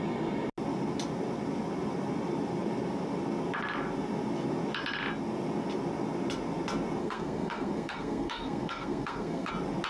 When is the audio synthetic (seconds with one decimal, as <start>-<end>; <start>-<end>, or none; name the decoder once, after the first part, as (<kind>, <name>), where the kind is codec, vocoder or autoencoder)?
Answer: 7.0-9.5 (codec, SNAC)